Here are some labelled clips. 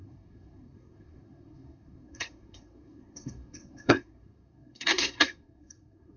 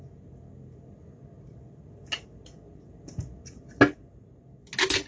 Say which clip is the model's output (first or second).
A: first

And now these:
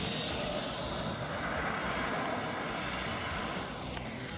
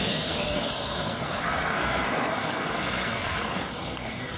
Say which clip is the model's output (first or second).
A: second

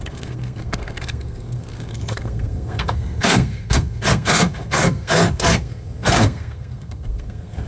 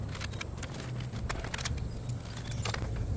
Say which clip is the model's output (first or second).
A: first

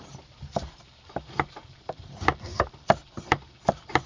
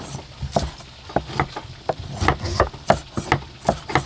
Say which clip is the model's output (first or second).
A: first